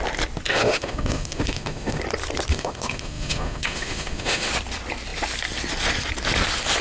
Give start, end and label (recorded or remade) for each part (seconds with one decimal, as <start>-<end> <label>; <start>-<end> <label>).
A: 0.0-0.5 recorded; 0.5-2.0 remade; 2.0-2.5 recorded; 2.5-4.5 remade; 4.5-6.8 recorded